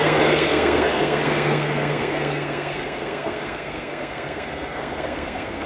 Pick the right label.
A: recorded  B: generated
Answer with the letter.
B